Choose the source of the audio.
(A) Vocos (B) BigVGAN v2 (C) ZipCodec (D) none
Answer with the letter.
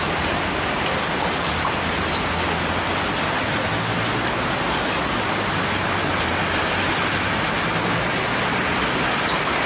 D